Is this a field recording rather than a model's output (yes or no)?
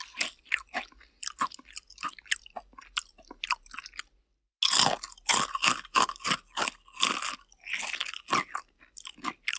yes